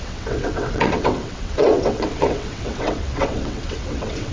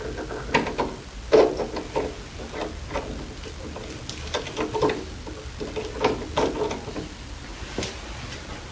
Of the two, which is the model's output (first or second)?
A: first